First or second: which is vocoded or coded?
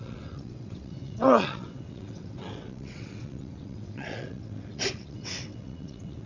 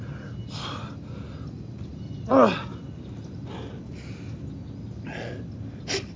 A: first